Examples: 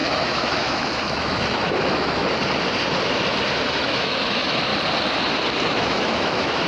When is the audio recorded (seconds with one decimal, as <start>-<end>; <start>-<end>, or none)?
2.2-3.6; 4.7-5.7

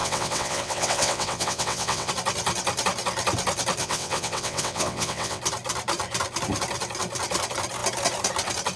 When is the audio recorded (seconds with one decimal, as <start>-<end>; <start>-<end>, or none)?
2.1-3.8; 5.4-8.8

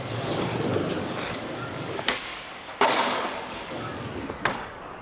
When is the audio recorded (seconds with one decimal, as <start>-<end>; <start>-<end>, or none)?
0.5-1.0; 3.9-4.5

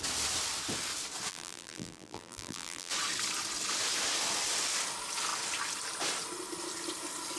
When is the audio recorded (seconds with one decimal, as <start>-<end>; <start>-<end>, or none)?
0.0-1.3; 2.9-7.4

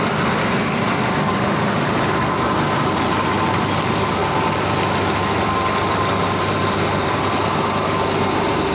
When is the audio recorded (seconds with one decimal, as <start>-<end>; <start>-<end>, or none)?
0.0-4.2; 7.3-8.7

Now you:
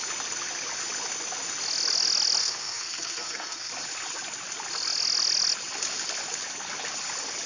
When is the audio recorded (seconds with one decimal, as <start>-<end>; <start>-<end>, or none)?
0.0-2.4; 3.7-7.5

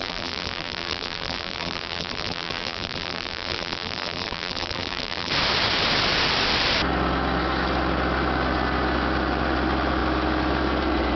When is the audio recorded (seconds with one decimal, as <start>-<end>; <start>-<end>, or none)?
5.3-11.2

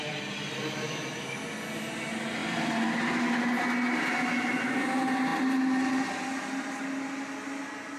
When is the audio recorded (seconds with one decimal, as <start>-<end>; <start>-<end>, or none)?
0.0-8.0